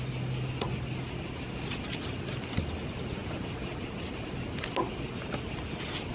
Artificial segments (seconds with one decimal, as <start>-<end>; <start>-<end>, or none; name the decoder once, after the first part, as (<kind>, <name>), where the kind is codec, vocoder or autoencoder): none